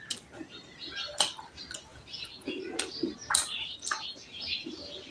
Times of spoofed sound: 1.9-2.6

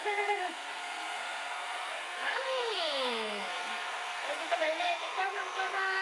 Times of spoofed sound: 0.0-6.0